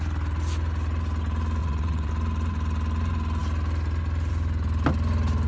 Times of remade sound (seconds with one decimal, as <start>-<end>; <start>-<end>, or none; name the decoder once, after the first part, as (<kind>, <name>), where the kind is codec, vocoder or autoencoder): 1.6-2.1 (vocoder, WaveNeXt)